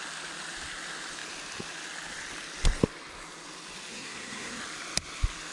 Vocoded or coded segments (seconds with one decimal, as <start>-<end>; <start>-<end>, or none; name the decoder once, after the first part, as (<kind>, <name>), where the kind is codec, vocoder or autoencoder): 3.9-4.6 (codec, SNAC)